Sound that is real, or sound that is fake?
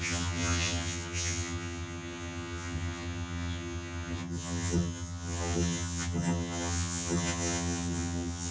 fake